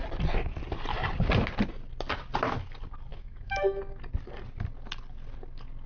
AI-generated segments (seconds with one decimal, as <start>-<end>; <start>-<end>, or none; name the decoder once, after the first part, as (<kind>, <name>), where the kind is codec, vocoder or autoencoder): 3.1-3.8 (autoencoder, DAC-VAE)